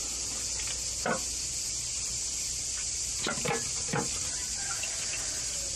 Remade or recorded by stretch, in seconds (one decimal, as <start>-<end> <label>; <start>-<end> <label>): 0.0-1.9 recorded; 1.9-4.7 remade; 4.7-5.8 recorded